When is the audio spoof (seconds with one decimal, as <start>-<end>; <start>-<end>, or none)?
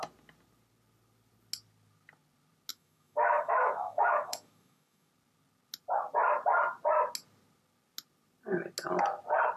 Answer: 2.7-5.1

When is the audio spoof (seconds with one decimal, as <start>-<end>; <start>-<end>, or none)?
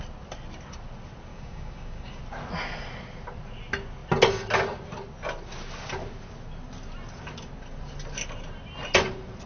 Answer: 1.3-2.2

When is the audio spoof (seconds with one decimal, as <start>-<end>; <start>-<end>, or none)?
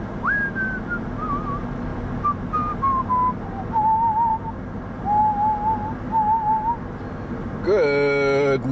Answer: none